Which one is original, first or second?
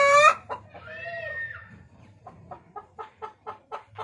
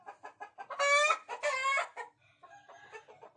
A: second